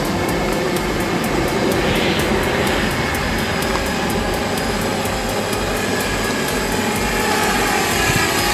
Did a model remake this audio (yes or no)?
no